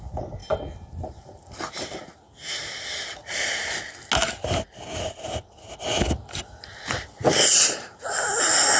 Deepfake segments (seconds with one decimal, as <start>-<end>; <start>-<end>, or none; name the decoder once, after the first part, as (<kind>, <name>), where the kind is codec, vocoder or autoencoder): none

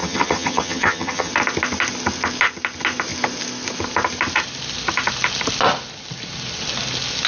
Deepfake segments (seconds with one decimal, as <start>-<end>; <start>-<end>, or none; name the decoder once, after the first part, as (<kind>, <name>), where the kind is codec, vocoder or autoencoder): 0.0-1.3 (vocoder, HiFi-GAN)

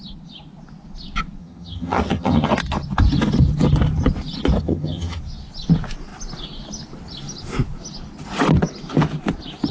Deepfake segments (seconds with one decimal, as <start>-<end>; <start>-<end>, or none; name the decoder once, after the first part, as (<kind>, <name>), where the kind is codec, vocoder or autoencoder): 1.4-2.5 (vocoder, HiFi-GAN); 4.6-5.2

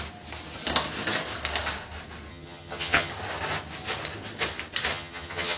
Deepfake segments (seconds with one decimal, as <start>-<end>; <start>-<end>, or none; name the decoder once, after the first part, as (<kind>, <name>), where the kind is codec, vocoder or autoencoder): 2.3-3.1 (vocoder, HiFi-GAN); 4.9-5.6

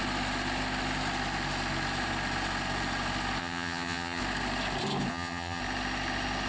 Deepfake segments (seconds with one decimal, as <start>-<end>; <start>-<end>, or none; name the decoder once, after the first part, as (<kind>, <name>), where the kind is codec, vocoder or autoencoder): 3.4-4.2 (vocoder, HiFi-GAN); 5.1-5.6

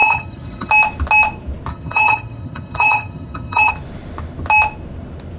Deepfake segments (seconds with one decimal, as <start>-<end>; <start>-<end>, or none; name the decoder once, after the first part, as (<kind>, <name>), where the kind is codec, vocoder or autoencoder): 0.0-0.7 (vocoder, HiFi-GAN); 1.7-3.7

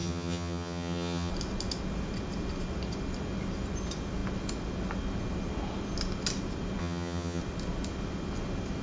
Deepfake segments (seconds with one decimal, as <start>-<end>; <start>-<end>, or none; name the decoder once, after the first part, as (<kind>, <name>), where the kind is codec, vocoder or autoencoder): 0.0-1.3 (vocoder, HiFi-GAN); 6.8-7.4

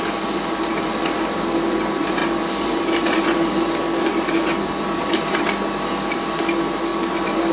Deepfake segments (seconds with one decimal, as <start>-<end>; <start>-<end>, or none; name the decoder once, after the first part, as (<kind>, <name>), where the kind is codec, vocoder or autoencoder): none